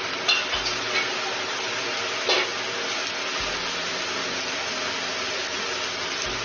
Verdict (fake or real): real